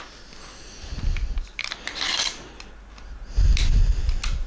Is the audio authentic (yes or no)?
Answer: yes